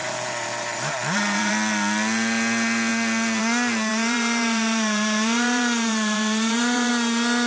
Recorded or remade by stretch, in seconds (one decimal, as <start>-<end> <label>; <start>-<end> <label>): 0.0-1.5 remade; 1.5-3.9 recorded; 3.9-6.9 remade; 6.9-7.5 recorded